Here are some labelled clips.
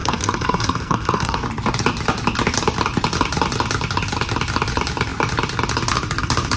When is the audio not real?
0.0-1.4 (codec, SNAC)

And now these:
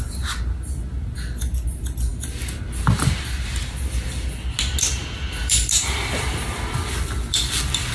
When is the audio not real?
5.4-6.9 (vocoder, BigVGAN v2)